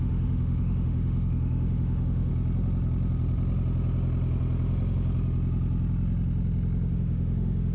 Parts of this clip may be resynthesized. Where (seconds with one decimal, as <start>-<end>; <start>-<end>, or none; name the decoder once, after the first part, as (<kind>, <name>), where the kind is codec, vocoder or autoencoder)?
0.0-2.3 (autoencoder, DAC-VAE); 6.9-7.7

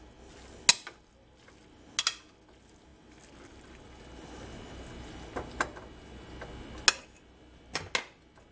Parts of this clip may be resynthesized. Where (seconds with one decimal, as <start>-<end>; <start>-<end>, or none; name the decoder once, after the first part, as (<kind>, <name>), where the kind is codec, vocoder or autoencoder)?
none

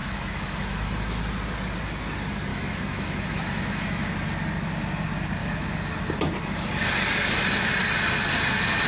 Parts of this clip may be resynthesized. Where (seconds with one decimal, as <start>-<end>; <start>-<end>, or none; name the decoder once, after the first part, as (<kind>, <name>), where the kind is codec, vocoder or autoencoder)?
0.0-1.2 (autoencoder, DAC-VAE); 2.5-4.1; 5.4-6.0